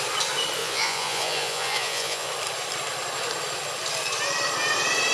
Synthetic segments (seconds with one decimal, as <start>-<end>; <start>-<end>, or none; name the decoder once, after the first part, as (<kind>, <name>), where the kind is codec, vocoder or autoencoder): 0.6-2.3 (vocoder, Vocos)